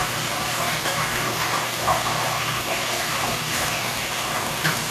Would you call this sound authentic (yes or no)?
no